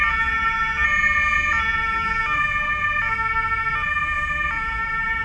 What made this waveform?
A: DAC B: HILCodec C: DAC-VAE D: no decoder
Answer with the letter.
D